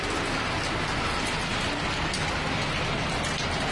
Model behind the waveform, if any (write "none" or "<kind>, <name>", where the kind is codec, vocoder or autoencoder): none